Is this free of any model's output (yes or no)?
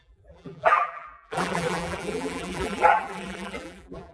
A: no